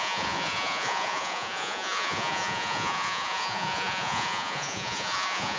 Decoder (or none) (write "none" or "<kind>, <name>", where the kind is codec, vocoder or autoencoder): vocoder, Vocos